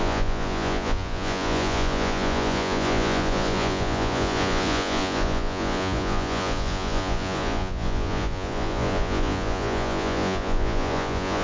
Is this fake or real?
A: fake